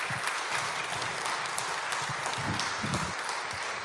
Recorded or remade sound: recorded